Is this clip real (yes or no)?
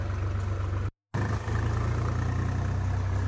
yes